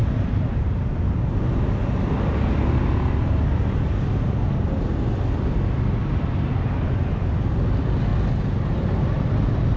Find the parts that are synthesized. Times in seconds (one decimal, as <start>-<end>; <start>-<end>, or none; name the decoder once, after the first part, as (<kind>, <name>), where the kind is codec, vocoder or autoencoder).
none